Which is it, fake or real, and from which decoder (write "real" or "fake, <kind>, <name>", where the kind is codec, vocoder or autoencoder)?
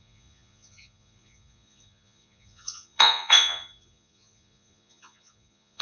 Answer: fake, vocoder, Vocos